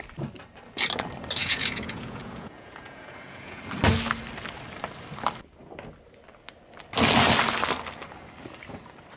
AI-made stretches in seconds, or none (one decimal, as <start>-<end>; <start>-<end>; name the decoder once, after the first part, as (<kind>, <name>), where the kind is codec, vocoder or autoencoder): 1.4-3.6 (vocoder, Vocos)